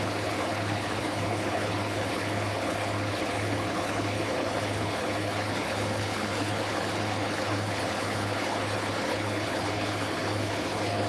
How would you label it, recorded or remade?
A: remade